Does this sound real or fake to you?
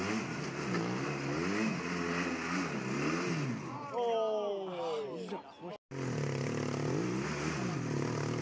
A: real